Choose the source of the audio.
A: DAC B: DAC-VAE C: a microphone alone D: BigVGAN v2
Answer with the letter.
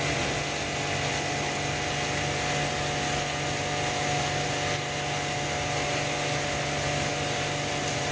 C